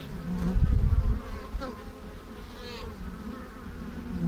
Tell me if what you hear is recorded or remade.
recorded